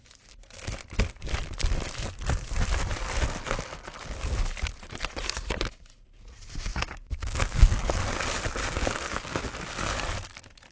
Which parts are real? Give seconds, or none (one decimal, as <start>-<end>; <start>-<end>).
0.0-6.7; 8.0-8.6; 9.4-10.7